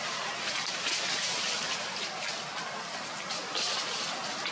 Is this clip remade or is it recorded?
recorded